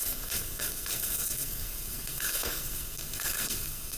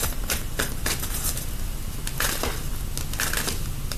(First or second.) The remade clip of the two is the first